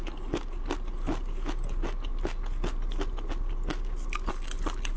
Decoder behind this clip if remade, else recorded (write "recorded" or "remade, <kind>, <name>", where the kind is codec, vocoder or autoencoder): recorded